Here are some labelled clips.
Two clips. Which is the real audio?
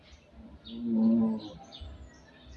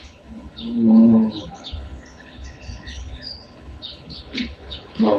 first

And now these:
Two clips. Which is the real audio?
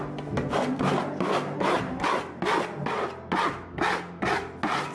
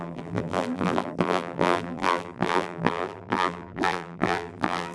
first